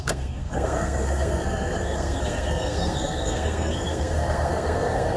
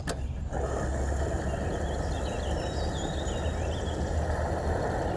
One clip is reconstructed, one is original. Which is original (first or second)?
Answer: second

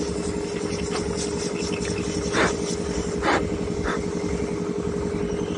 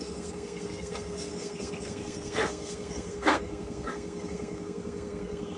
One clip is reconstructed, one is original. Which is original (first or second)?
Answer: first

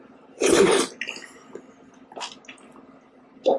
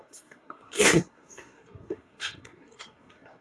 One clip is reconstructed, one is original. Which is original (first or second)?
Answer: first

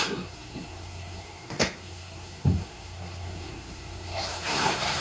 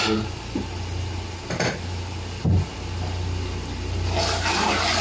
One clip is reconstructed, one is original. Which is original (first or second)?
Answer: second